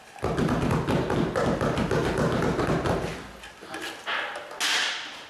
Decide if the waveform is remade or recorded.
recorded